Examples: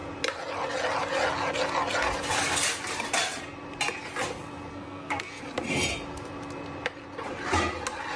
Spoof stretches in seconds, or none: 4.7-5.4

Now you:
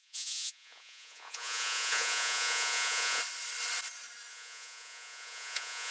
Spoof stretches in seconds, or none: 0.0-3.2; 4.3-5.9